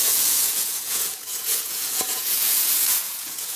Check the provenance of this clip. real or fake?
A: fake